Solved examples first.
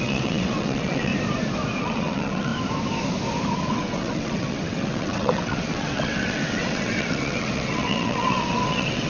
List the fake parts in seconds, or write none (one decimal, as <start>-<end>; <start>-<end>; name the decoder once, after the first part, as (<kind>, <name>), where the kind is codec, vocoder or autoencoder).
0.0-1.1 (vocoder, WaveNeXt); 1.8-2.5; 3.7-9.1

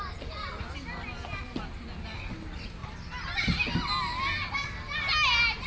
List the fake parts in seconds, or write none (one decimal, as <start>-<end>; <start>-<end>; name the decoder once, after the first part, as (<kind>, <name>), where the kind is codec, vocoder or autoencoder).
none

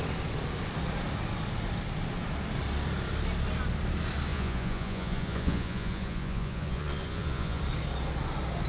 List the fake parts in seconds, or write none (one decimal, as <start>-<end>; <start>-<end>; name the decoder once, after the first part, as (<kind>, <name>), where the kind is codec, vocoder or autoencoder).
4.3-7.6 (vocoder, Vocos)